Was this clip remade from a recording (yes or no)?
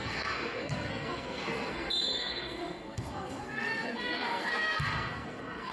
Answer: yes